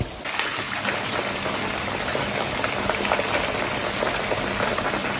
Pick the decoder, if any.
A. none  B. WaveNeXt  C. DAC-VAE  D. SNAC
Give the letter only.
A